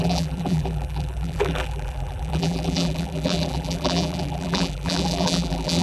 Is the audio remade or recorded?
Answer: remade